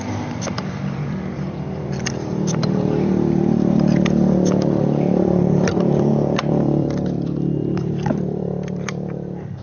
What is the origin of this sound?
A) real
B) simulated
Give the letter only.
B